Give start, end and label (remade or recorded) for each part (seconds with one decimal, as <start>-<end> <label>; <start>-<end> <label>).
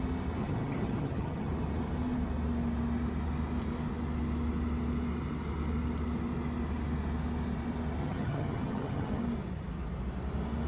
0.0-0.4 recorded; 0.4-1.5 remade; 1.5-8.0 recorded; 8.0-9.2 remade; 9.2-10.7 recorded